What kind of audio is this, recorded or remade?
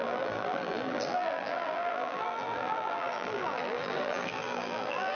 remade